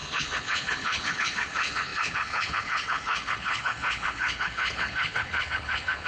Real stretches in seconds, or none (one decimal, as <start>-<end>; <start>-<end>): none

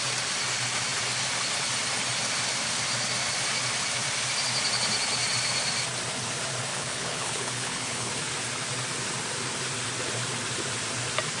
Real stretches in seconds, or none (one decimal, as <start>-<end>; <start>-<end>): 0.0-6.7; 8.1-11.4

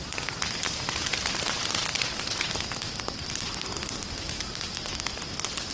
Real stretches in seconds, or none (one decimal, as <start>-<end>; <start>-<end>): 0.0-5.7

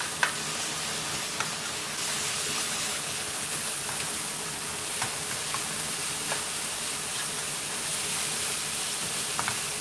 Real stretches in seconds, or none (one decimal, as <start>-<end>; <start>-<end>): 0.0-1.8; 3.8-9.8

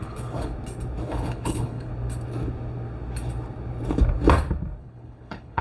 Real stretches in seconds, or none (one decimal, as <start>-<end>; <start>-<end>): 0.5-1.0; 1.9-4.8

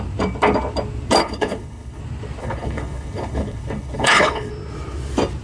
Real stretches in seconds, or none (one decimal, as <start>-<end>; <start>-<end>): 0.0-1.2; 2.0-2.4; 4.5-5.4

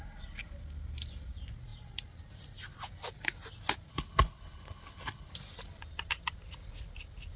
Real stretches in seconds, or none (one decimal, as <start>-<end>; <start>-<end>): 0.0-3.9; 5.3-7.4

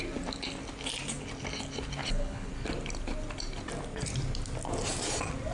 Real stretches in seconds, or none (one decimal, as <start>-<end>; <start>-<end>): 0.0-2.0; 2.5-5.5